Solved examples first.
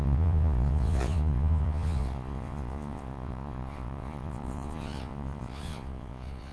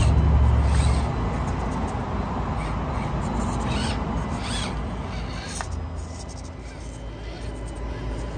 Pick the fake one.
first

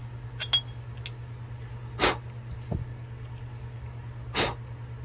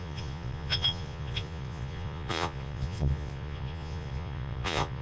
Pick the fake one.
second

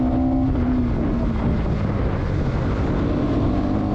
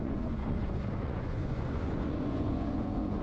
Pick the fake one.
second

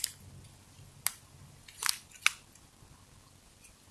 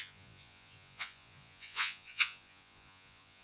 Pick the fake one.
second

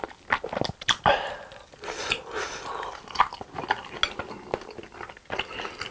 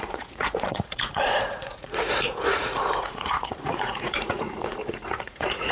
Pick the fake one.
second